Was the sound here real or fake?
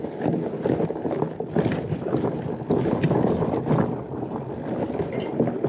real